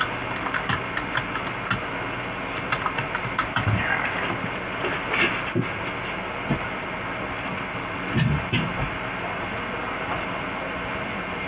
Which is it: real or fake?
real